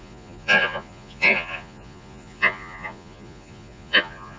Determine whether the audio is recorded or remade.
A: remade